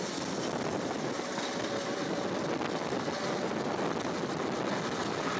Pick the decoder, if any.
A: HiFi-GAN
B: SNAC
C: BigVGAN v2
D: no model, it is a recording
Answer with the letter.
D